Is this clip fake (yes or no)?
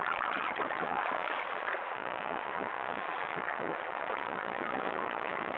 yes